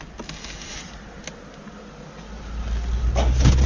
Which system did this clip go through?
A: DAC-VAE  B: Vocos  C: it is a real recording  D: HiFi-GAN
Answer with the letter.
C